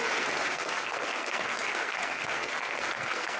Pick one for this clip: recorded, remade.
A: remade